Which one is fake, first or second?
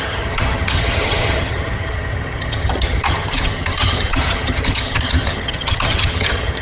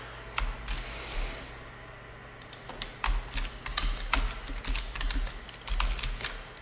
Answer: first